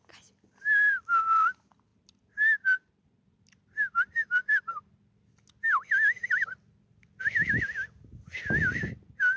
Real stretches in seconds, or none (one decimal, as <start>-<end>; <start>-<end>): 0.0-9.4